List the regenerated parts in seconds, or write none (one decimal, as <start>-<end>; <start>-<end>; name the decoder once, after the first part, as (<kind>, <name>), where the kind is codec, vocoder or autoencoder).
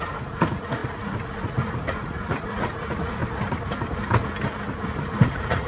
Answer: 0.0-3.2 (vocoder, Vocos); 5.2-5.7